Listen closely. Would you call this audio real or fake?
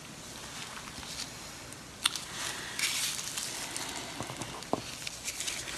real